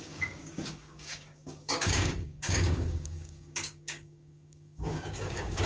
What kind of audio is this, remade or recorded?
remade